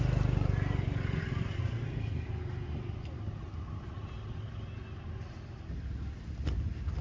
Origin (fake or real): real